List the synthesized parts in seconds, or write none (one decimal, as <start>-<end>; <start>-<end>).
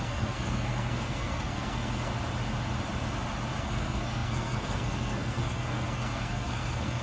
0.0-2.1; 3.6-7.0